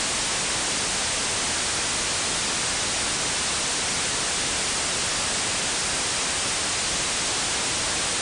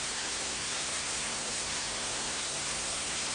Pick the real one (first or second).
first